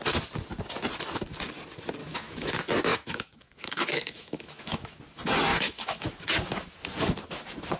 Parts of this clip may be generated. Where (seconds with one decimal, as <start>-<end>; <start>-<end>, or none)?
2.0-2.5; 2.9-5.0; 5.5-6.3